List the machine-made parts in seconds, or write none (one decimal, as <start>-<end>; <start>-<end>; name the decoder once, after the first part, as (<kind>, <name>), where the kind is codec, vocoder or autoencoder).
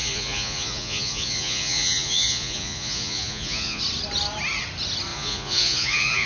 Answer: 0.0-3.8 (vocoder, Vocos); 5.1-6.3